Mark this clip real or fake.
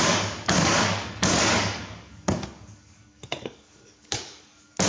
fake